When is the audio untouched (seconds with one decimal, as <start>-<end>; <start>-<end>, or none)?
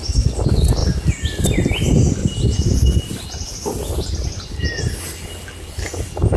0.0-2.2; 4.8-6.4